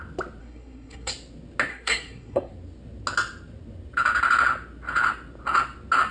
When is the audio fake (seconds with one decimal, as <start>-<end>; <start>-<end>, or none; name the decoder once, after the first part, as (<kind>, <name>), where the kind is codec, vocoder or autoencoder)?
0.4-1.1 (codec, SNAC); 1.7-2.5